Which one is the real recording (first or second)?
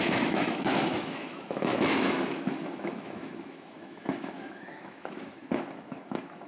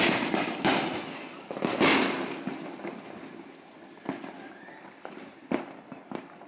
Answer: second